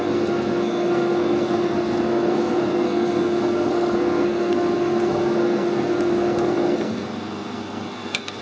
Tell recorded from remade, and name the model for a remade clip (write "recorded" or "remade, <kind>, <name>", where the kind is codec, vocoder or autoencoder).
remade, codec, SNAC